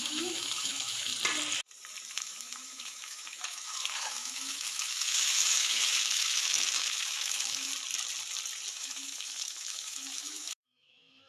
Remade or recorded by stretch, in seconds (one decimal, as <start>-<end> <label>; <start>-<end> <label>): 0.0-1.1 remade; 1.1-2.1 recorded; 2.1-7.7 remade; 7.7-8.7 recorded; 8.7-11.3 remade